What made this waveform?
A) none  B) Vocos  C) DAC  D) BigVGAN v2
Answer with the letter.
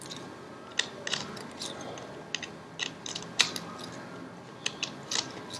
A